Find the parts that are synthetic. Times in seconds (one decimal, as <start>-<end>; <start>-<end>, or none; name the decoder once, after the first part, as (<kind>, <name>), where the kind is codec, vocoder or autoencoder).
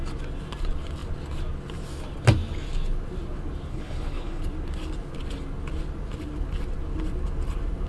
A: 3.7-4.4 (codec, HILCodec)